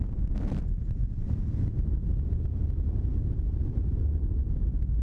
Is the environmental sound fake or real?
real